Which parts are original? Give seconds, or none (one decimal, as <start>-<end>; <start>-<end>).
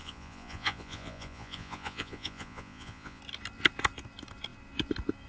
3.2-5.3